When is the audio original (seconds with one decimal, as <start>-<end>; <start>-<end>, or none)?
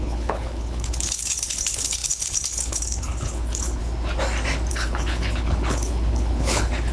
3.8-4.7